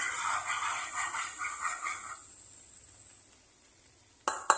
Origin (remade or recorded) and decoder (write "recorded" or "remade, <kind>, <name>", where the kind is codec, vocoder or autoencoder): recorded